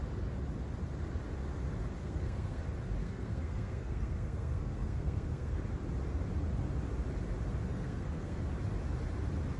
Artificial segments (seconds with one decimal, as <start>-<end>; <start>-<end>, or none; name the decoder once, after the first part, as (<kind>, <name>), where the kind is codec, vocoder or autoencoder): 2.0-2.6 (codec, SNAC); 3.0-5.6; 7.7-8.4

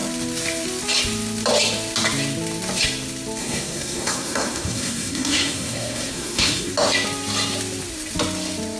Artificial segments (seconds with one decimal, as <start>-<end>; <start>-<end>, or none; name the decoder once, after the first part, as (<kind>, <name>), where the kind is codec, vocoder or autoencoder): 3.4-6.7 (codec, SNAC)

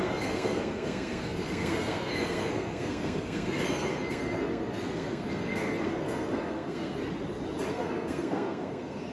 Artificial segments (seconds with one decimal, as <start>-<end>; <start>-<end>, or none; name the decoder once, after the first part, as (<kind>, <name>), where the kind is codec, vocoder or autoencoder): 0.0-7.0 (codec, SNAC); 7.7-9.1

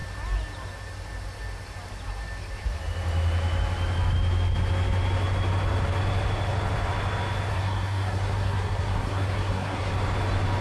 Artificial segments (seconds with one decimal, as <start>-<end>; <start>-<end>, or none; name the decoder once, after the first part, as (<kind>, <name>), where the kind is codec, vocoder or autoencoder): 7.5-9.9 (codec, SNAC)